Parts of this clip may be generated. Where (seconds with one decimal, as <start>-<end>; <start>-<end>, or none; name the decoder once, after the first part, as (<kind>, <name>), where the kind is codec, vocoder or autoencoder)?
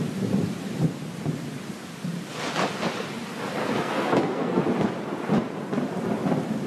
3.6-4.6 (codec, SNAC)